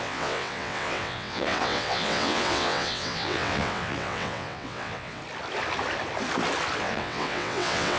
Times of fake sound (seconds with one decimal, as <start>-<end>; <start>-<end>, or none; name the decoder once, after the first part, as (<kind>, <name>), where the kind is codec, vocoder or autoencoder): 0.0-5.2 (vocoder, WaveNeXt); 6.8-8.0